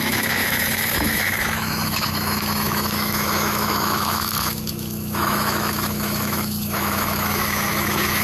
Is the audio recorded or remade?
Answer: remade